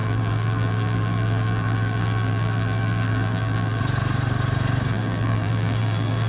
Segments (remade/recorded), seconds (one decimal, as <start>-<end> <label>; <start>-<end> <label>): 0.0-3.8 remade; 3.8-4.9 recorded; 4.9-6.3 remade